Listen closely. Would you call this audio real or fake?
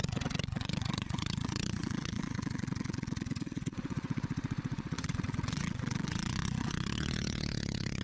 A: fake